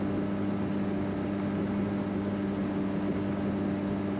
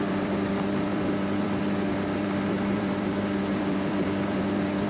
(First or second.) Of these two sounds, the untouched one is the first